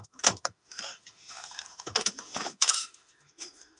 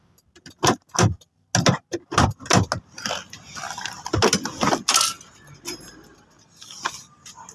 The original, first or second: second